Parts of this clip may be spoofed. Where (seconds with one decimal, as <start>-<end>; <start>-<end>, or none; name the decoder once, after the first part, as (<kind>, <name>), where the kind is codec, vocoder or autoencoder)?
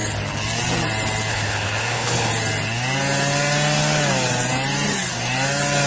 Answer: 1.3-2.3 (codec, HILCodec)